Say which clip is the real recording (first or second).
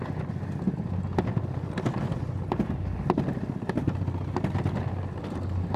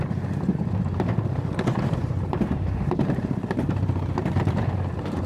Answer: first